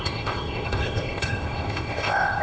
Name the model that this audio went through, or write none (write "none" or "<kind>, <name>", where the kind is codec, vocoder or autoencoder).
codec, ZipCodec